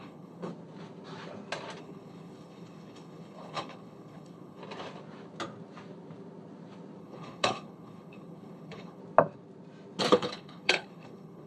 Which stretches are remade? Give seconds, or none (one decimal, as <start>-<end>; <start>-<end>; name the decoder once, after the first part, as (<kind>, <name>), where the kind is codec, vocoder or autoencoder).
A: 0.0-0.5 (codec, HILCodec); 1.8-4.6; 7.0-9.0; 10.1-11.5